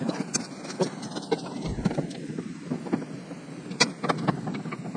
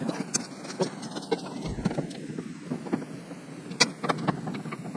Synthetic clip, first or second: first